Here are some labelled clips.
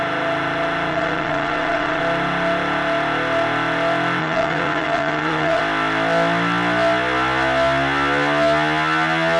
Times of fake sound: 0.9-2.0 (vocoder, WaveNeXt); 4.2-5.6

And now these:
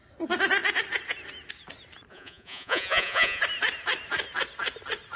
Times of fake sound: 2.1-3.4 (vocoder, Vocos)

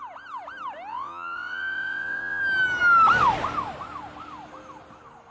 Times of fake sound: 0.9-2.4 (vocoder, WaveNeXt)

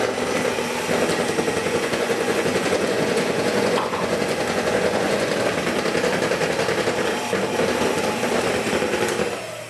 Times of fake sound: 1.6-5.3 (vocoder, Vocos)

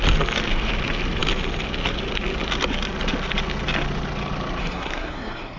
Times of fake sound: 4.6-5.6 (codec, SNAC)

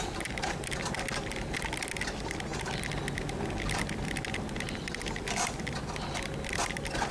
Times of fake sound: none